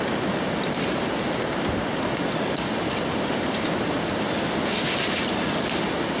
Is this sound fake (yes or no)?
no